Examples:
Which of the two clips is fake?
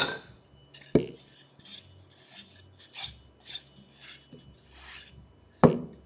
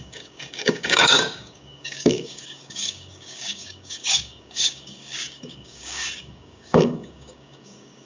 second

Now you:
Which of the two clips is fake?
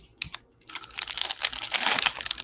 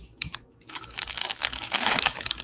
second